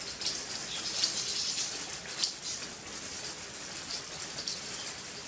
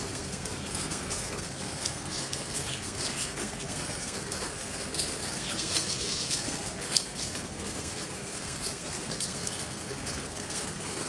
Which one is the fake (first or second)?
second